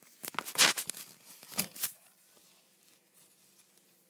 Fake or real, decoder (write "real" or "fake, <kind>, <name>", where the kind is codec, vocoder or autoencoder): real